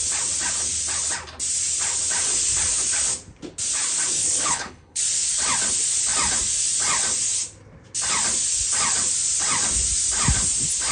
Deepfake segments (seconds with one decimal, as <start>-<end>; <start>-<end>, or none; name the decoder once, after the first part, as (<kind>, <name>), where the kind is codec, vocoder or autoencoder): 4.2-5.0 (codec, HILCodec)

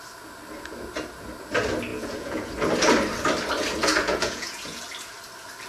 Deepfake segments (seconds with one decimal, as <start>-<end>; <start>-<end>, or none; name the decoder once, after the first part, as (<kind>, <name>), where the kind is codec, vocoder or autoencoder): 1.9-2.5 (vocoder, Vocos); 3.8-4.8

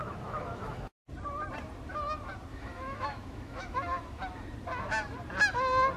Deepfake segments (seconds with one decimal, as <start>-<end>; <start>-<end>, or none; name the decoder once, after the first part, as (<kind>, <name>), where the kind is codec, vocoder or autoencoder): 0.0-0.9 (autoencoder, DAC-VAE); 2.5-4.2

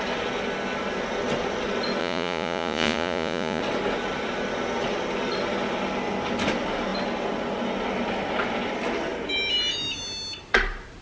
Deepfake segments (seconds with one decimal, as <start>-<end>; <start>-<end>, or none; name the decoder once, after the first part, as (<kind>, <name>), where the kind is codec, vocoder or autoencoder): 2.0-3.6 (vocoder, Vocos)

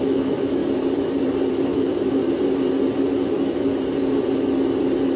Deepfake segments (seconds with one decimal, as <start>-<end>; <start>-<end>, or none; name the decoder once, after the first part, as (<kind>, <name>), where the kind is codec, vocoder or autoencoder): 0.0-0.6 (autoencoder, DAC-VAE); 1.5-2.2; 3.3-3.7

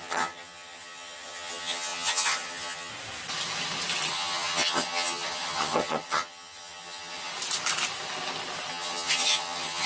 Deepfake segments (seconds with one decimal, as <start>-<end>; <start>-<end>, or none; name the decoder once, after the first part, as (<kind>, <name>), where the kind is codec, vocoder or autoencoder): 0.0-2.9 (vocoder, HiFi-GAN); 4.1-7.3; 8.7-9.9